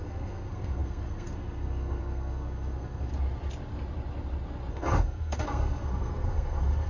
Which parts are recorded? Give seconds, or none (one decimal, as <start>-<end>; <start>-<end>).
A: 3.1-4.7